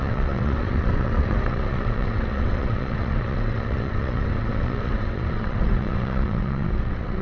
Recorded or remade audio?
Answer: remade